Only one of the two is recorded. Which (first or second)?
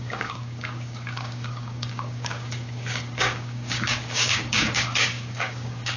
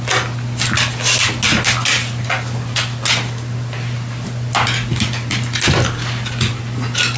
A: second